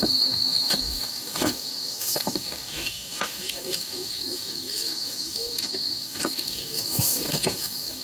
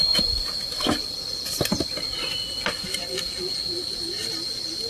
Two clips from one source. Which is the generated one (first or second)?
first